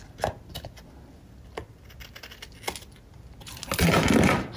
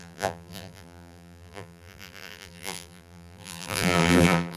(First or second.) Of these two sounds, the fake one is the second